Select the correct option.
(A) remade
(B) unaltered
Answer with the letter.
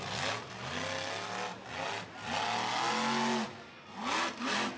B